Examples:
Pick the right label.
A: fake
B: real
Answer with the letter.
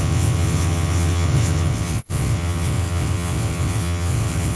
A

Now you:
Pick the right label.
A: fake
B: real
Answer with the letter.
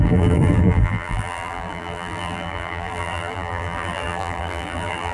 A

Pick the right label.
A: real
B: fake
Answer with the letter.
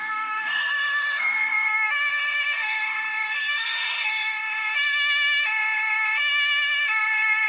B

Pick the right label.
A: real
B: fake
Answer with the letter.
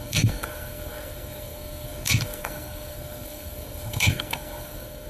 B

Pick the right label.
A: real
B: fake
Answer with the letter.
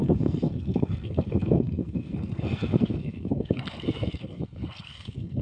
B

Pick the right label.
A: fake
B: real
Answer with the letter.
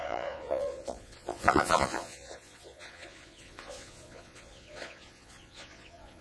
A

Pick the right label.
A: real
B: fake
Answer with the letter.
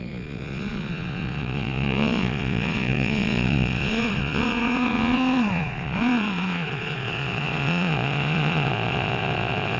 B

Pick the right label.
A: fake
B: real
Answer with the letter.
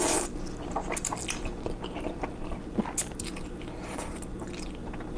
B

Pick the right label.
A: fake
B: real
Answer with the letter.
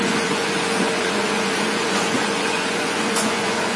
A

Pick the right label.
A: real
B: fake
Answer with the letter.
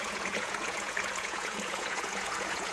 B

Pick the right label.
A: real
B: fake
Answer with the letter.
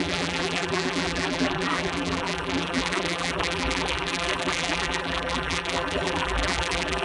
B